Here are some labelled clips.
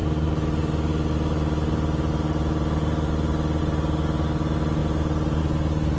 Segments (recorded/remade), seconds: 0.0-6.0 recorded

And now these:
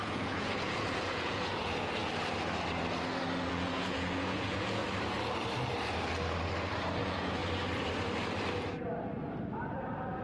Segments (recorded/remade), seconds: 0.0-2.0 remade; 2.0-3.5 recorded; 3.5-4.8 remade; 4.8-7.0 recorded; 7.0-7.4 remade; 7.4-10.2 recorded

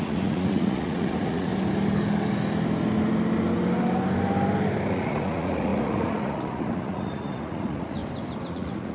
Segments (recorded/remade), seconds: 0.0-1.5 remade; 1.5-4.9 recorded; 4.9-8.0 remade; 8.0-8.5 recorded; 8.5-8.9 remade

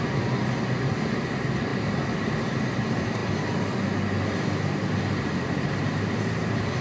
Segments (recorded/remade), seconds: 0.0-6.8 recorded

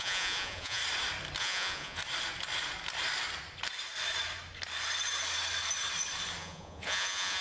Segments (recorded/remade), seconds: 0.0-0.8 remade; 0.8-1.4 recorded; 1.4-2.0 remade; 2.0-6.4 recorded; 6.4-7.4 remade

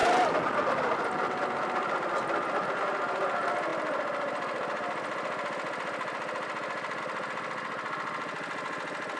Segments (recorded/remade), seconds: 0.0-9.2 recorded